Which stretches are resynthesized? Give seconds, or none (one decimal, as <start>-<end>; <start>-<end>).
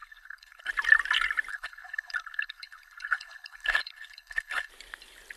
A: 0.0-0.7; 1.5-4.7